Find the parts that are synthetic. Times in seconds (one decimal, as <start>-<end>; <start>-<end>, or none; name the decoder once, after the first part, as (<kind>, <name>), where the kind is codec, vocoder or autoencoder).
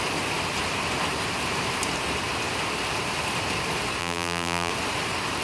4.0-4.7 (vocoder, BigVGAN v2)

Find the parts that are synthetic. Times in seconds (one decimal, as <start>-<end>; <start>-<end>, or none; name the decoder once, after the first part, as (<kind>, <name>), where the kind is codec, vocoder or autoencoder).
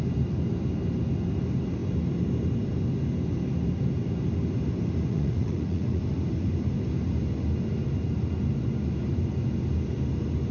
5.1-6.0 (vocoder, Vocos)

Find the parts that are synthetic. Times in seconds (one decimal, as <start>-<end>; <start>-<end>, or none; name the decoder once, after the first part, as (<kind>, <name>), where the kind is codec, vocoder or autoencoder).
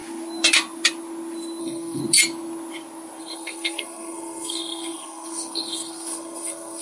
1.6-2.0 (codec, SNAC); 3.2-6.8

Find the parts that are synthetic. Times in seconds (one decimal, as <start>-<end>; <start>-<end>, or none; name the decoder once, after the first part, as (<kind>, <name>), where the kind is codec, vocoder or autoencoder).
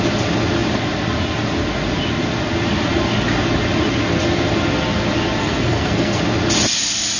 5.4-6.2 (codec, SNAC)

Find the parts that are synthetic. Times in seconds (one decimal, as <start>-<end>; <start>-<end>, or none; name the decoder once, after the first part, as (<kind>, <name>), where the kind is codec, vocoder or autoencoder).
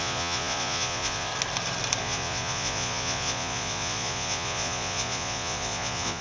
0.0-1.3 (vocoder, Vocos); 2.0-6.2